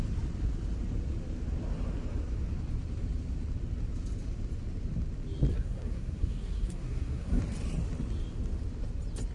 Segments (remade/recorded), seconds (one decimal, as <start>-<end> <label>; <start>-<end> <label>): 0.0-5.5 recorded; 5.5-7.4 remade; 7.4-9.3 recorded